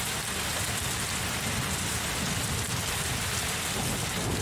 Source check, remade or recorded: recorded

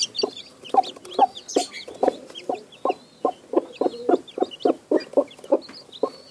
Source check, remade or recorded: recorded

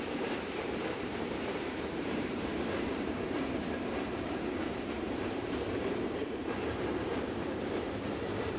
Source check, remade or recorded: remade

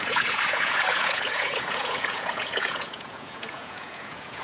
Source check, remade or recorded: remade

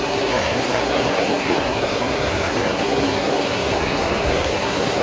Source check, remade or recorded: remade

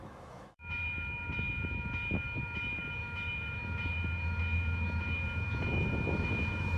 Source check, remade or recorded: remade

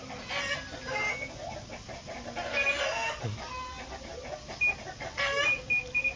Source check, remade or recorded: recorded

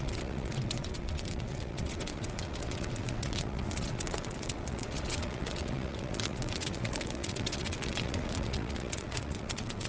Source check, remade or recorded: remade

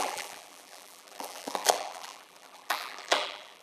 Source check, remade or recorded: remade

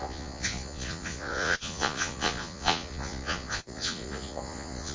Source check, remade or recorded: remade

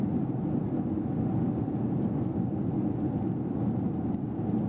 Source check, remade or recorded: recorded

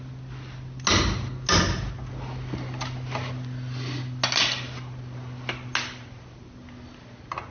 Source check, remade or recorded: recorded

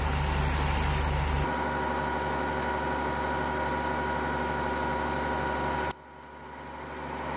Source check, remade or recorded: recorded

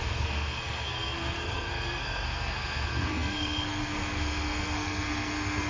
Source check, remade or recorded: remade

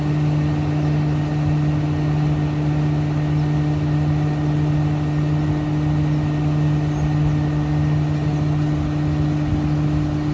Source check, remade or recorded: recorded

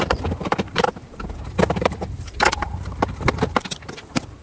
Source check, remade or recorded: remade